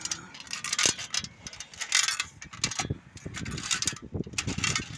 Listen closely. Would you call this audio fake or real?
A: real